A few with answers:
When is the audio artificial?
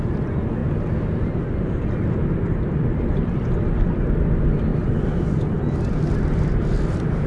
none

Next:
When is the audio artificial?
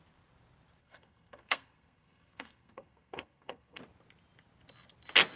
0.8-3.8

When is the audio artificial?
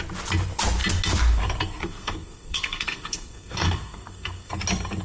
1.8-4.5